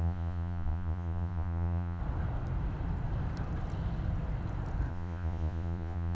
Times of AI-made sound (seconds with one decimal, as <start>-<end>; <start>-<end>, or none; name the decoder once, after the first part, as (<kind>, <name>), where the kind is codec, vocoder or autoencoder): 0.0-2.0 (vocoder, Vocos); 4.9-6.1